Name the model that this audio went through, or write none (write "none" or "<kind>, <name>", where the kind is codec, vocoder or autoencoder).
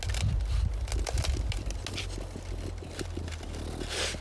none